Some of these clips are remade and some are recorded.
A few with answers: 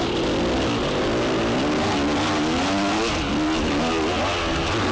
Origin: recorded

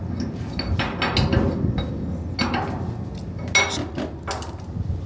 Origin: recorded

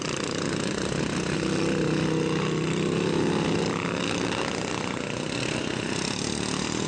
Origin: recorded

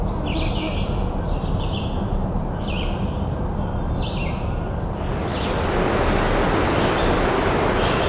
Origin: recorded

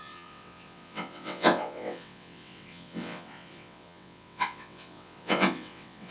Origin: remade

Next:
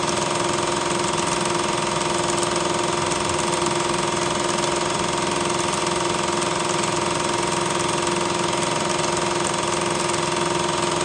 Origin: recorded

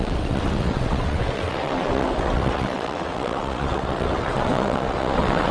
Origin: remade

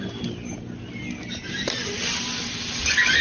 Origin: recorded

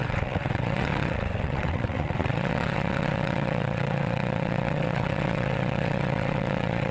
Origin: remade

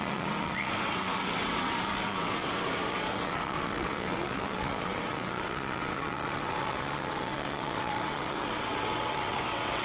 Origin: remade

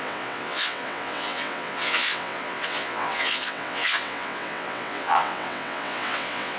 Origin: remade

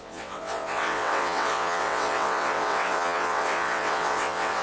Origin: remade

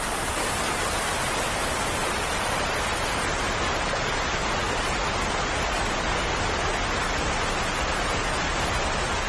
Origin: recorded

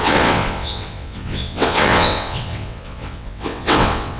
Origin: remade